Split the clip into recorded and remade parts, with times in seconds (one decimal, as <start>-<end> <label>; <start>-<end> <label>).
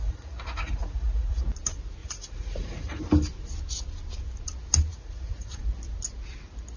0.0-1.4 remade; 1.4-2.0 recorded; 2.0-3.0 remade; 3.0-4.9 recorded; 4.9-5.6 remade; 5.6-6.8 recorded